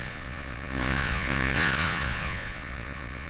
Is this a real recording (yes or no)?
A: no